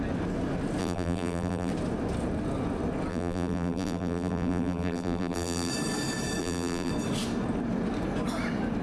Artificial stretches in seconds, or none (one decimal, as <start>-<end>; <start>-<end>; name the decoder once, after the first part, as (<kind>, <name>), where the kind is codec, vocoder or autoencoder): 0.8-1.7 (vocoder, BigVGAN v2); 3.1-5.7; 6.4-6.9